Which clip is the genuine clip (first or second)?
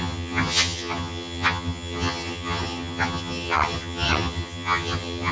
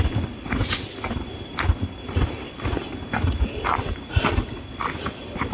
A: second